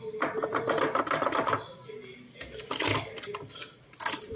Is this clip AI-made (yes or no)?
no